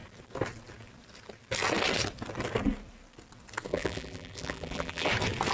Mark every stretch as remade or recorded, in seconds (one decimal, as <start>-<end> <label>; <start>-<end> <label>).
0.0-3.7 recorded; 3.7-5.1 remade; 5.1-5.5 recorded